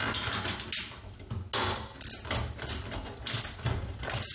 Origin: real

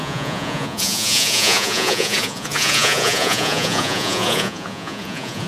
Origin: fake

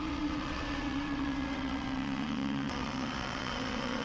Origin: fake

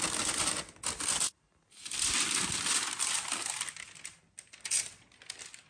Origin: real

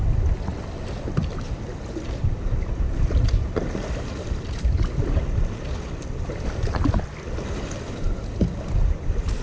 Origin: real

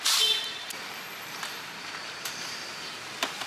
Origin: fake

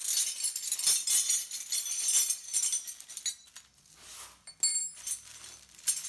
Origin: real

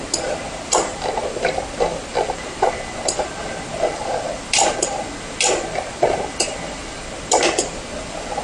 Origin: real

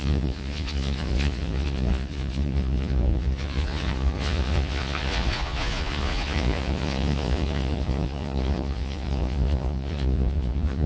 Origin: fake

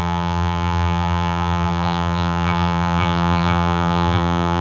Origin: fake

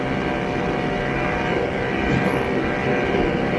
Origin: real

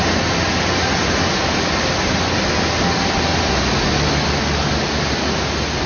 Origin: real